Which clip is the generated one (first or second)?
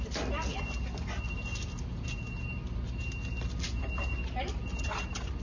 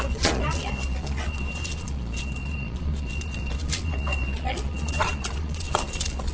second